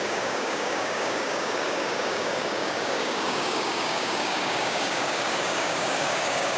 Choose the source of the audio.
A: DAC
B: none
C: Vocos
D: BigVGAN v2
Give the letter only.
A